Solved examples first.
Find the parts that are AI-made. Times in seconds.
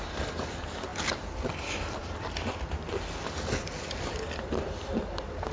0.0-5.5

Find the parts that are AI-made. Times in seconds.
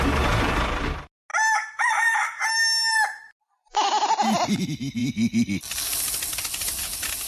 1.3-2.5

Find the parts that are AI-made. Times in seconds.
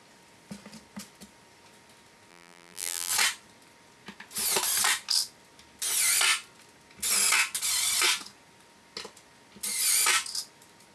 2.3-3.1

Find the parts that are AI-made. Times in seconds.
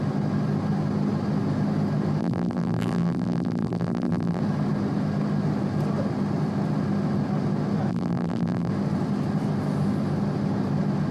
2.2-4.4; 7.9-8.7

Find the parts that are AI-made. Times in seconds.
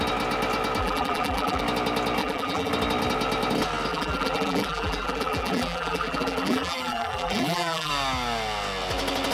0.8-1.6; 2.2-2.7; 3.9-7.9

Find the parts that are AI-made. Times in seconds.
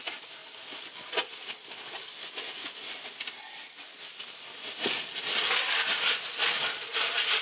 none